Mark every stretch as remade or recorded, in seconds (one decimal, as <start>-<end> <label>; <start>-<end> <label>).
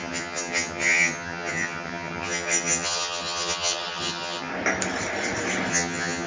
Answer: 0.0-4.5 remade; 4.5-5.7 recorded; 5.7-6.3 remade